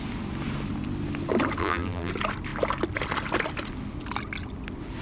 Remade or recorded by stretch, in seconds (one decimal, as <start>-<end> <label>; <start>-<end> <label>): 0.0-1.6 recorded; 1.6-2.1 remade; 2.1-5.0 recorded

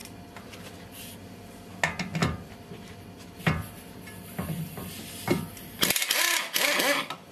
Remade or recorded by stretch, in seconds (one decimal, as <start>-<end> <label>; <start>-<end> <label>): 0.0-7.3 recorded

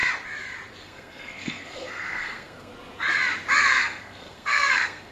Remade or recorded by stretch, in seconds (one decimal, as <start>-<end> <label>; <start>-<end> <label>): 0.0-0.8 recorded; 0.8-2.7 remade; 2.7-3.6 recorded; 3.6-5.1 remade

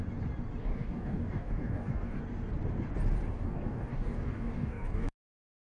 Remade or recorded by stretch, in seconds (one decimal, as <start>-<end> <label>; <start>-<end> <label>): 0.0-0.6 recorded; 0.6-2.2 remade; 2.2-3.3 recorded; 3.3-5.7 remade

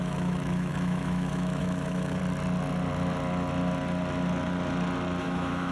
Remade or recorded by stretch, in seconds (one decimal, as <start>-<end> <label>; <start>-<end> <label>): 0.0-2.2 remade; 2.2-5.2 recorded; 5.2-5.7 remade